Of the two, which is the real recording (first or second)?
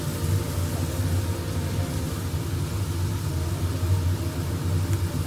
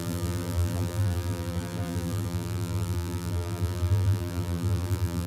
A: first